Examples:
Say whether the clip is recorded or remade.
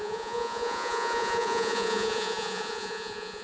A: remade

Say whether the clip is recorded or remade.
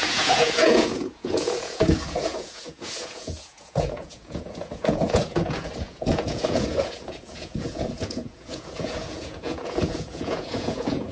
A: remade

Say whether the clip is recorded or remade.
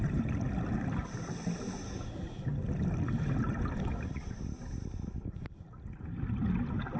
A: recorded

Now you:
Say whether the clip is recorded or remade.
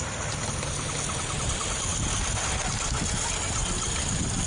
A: recorded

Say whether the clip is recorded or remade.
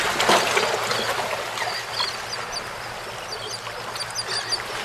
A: recorded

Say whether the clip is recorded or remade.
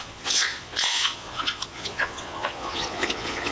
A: remade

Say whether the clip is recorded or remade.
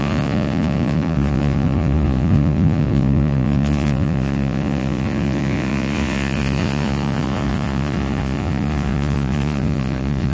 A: remade